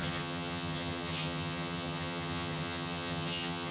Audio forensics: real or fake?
fake